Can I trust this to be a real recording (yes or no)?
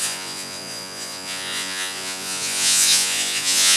no